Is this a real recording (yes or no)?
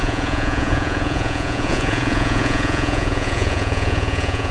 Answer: no